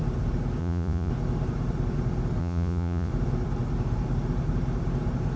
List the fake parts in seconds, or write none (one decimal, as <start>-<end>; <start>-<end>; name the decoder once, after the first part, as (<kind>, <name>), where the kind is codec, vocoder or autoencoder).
0.6-1.1 (vocoder, Vocos); 2.4-3.1